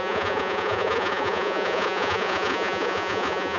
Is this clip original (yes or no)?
no